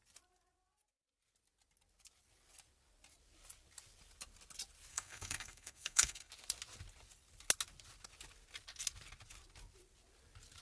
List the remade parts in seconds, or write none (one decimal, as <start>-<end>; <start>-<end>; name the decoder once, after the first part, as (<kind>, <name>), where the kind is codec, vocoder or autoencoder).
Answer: 4.9-6.3 (codec, SNAC)

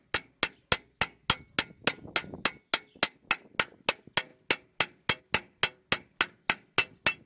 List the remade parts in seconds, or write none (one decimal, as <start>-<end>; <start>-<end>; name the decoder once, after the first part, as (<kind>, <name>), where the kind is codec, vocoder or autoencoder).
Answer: none